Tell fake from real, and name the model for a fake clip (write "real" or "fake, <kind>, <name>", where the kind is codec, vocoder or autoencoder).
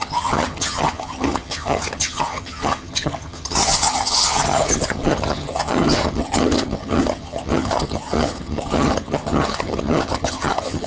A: fake, vocoder, HiFi-GAN